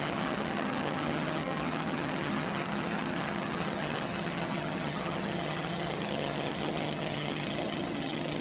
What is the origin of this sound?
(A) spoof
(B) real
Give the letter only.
A